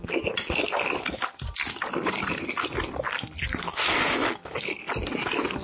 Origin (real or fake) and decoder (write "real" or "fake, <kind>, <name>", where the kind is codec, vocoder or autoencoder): real